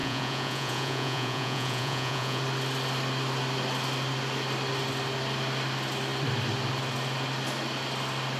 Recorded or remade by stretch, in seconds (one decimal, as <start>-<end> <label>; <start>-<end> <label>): 0.0-2.4 remade; 2.4-8.4 recorded